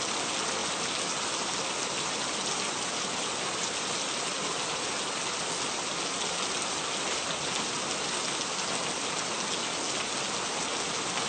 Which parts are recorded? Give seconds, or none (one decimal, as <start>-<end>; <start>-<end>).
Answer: 0.0-11.3